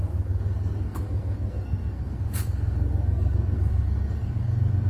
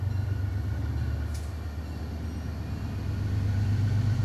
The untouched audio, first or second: second